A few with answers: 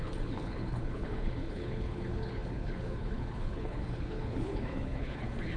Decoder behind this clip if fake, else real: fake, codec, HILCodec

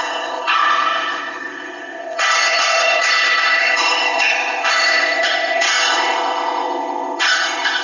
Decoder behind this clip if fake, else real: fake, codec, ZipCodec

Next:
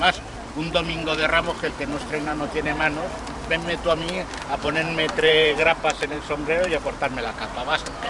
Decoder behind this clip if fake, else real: fake, vocoder, BigVGAN v2